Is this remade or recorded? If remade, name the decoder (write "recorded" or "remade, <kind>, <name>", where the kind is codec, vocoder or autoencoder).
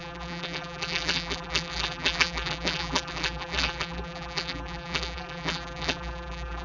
remade, vocoder, BigVGAN v2